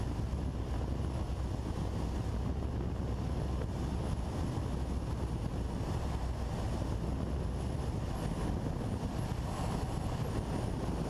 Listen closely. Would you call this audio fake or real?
real